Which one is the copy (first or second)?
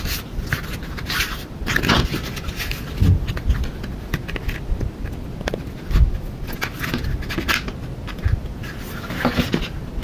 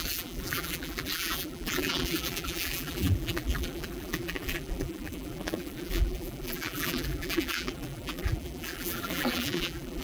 second